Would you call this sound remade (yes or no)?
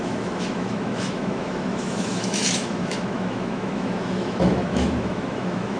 yes